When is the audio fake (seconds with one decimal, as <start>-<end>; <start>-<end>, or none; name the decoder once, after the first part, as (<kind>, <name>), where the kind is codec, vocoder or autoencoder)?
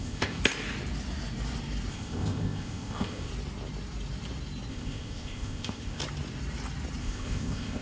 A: 0.0-0.4 (codec, ZipCodec); 1.9-3.3; 4.7-6.0; 7.0-7.8